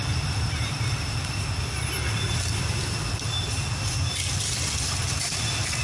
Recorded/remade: recorded